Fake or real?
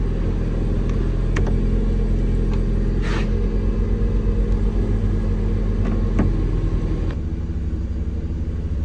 real